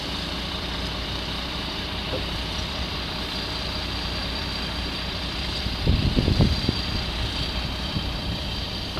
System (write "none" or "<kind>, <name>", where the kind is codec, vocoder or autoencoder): vocoder, BigVGAN v2